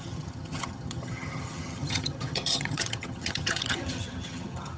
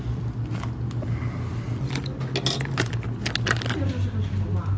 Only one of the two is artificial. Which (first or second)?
first